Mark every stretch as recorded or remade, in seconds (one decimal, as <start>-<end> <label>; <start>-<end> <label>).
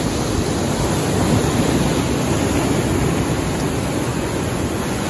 0.0-4.1 recorded; 4.1-5.1 remade